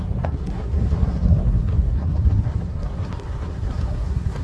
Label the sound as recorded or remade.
remade